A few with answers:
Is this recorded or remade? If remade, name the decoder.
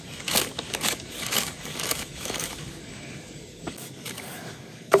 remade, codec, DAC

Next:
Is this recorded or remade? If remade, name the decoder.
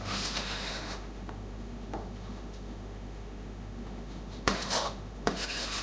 remade, autoencoder, DAC-VAE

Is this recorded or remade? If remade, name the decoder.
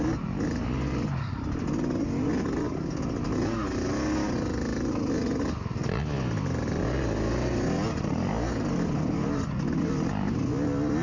recorded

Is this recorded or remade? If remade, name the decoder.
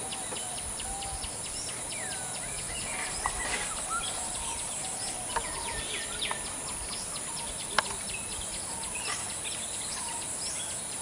recorded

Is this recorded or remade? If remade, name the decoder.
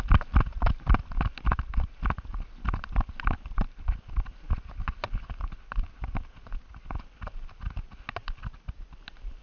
recorded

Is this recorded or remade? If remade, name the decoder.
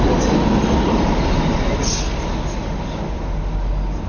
recorded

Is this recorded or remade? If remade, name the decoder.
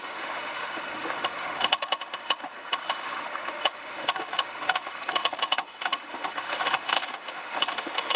remade, autoencoder, DAC-VAE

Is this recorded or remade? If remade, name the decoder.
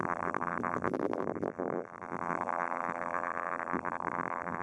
remade, vocoder, BigVGAN v2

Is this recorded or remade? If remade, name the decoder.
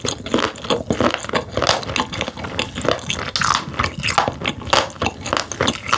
recorded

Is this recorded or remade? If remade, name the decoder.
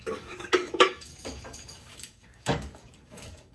remade, codec, DAC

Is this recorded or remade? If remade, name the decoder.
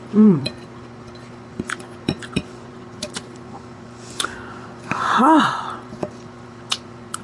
remade, vocoder, Vocos